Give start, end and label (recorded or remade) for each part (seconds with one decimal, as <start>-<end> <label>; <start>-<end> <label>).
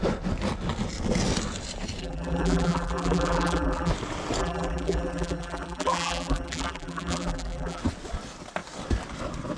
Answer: 0.0-2.0 recorded; 2.0-3.9 remade; 3.9-4.4 recorded; 4.4-7.8 remade; 7.8-9.6 recorded